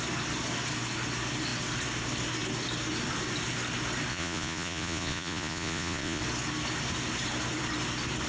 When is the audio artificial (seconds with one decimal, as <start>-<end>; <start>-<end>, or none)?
4.1-6.2